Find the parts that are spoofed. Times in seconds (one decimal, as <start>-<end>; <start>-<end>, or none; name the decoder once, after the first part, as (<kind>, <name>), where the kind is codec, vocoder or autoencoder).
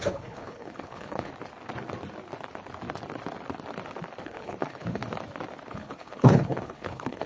0.0-1.3 (codec, HILCodec); 4.2-5.0; 5.7-7.3